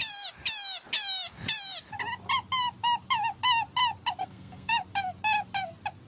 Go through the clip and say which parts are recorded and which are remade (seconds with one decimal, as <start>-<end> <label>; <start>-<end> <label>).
0.0-4.2 recorded; 4.2-4.7 remade; 4.7-6.1 recorded